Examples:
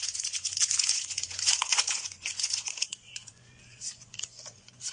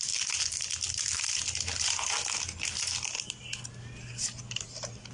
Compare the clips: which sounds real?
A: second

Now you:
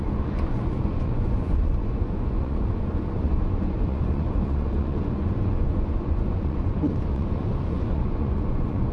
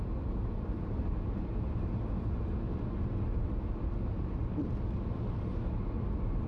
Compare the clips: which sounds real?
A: second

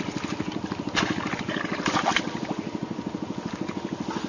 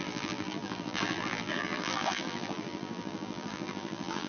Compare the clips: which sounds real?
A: first